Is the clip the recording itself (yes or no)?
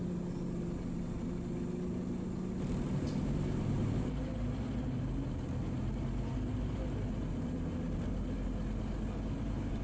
yes